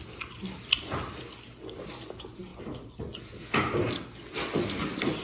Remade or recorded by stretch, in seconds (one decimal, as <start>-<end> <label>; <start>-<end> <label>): 0.0-5.2 recorded